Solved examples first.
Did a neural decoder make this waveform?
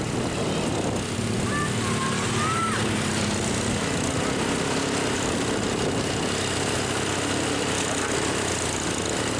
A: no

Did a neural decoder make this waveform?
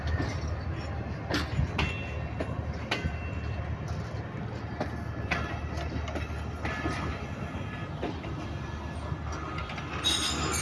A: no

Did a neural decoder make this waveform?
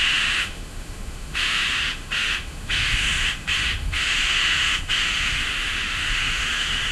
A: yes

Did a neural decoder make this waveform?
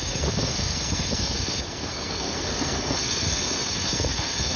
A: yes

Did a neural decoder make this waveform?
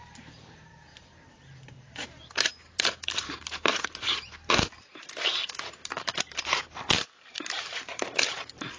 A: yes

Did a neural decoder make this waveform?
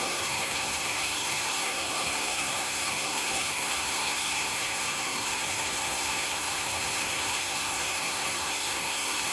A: yes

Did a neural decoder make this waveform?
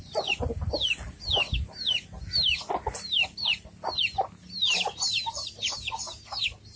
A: no